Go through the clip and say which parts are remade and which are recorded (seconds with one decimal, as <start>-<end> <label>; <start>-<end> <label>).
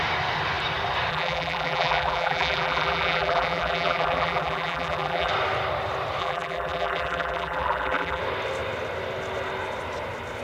0.0-1.1 recorded; 1.1-5.3 remade; 5.3-6.2 recorded; 6.2-8.2 remade; 8.2-10.4 recorded